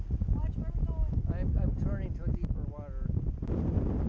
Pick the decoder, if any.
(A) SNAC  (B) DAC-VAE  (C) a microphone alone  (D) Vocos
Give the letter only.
C